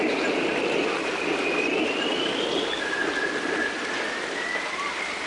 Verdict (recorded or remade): recorded